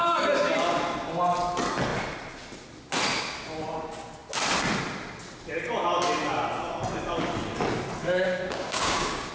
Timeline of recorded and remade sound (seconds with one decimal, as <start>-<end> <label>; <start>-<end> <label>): 0.0-8.0 recorded; 8.0-9.3 remade